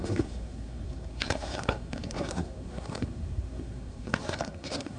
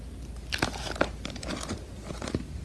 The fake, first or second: first